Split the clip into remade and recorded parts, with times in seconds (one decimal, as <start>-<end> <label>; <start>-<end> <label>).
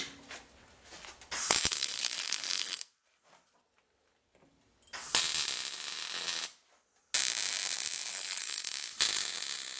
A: 0.0-1.7 recorded; 1.7-2.9 remade; 2.9-8.1 recorded; 8.1-8.6 remade; 8.6-9.8 recorded